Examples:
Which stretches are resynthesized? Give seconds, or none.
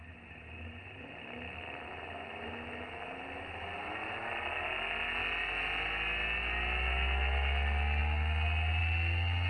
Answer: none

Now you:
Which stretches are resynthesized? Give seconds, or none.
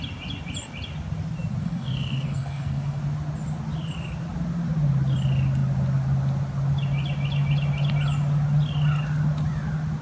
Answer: 1.6-3.0 (codec, SNAC)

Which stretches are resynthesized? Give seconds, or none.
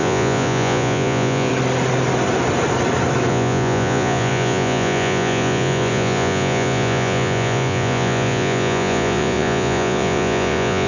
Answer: 0.0-1.5 (vocoder, Vocos); 3.3-10.9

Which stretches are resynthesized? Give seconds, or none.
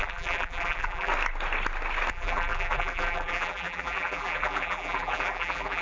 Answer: 0.0-1.1 (vocoder, BigVGAN v2); 2.1-5.8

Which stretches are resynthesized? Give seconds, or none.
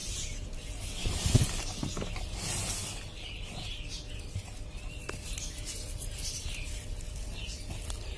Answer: 0.0-0.7 (vocoder, BigVGAN v2)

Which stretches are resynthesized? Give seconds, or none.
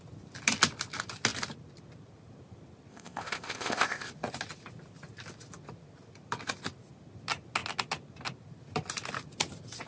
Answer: 2.9-4.1 (codec, ZipCodec)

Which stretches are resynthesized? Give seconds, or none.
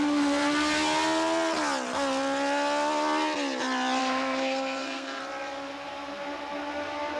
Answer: 4.0-5.2 (codec, SNAC)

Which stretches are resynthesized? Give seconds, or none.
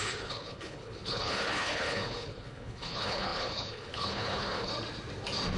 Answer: 0.0-4.7 (codec, HILCodec)